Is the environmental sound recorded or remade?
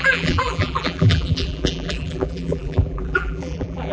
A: remade